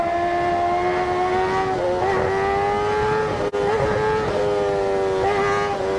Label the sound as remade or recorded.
recorded